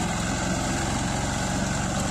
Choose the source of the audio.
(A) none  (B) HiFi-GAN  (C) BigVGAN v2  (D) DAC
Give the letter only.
A